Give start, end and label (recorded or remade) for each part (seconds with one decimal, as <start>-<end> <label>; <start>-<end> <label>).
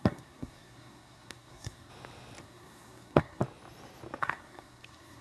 0.0-1.9 remade; 1.9-2.4 recorded; 2.4-3.4 remade; 3.4-4.2 recorded; 4.2-5.2 remade